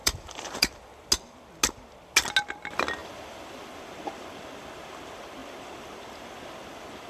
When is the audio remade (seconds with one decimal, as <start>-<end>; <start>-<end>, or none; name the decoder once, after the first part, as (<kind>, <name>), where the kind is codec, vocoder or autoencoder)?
0.0-0.7 (vocoder, BigVGAN v2); 3.0-3.8